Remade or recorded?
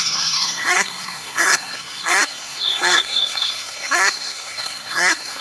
remade